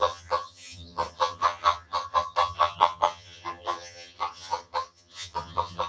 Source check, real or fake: fake